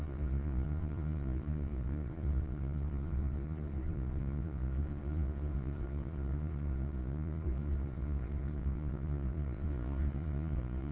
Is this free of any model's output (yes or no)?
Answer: no